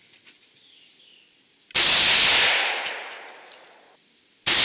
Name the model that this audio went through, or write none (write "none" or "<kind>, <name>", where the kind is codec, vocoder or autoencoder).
none